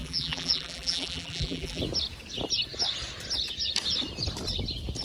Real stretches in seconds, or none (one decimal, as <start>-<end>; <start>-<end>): 1.8-5.0